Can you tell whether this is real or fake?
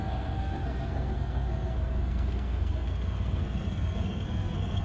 fake